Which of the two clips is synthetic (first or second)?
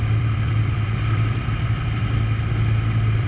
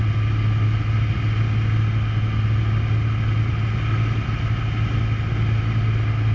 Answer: first